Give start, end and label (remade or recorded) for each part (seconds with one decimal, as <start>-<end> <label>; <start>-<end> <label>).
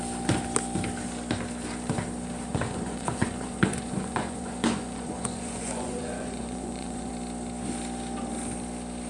0.0-2.5 recorded; 2.5-7.1 remade; 7.1-9.1 recorded